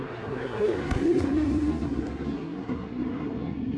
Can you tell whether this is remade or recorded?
remade